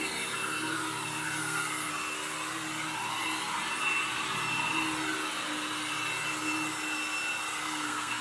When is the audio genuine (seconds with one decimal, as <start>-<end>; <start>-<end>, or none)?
0.0-1.4; 1.9-7.6